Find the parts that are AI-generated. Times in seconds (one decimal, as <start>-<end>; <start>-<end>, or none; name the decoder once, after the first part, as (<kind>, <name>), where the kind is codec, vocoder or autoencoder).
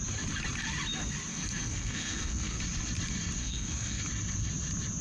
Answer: 1.3-2.6 (codec, SNAC); 3.4-4.0